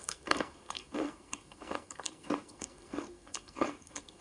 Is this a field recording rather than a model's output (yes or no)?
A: no